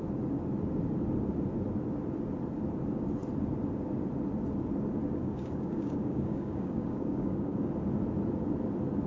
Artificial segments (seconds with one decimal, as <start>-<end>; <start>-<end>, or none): 5.2-7.7